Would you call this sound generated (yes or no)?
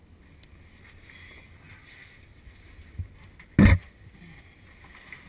no